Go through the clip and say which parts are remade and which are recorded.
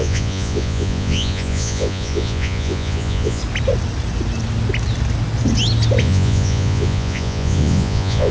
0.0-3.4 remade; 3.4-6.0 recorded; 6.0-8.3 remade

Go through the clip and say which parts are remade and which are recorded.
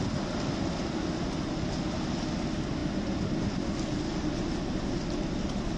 0.0-5.8 recorded